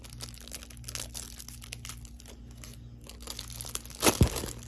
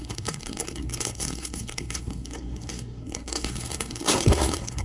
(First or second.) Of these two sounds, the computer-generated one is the second